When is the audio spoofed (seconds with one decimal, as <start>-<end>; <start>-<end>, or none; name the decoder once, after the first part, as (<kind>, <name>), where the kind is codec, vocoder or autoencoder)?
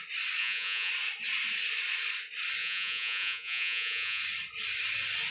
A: 0.4-0.9 (vocoder, Vocos); 2.6-4.2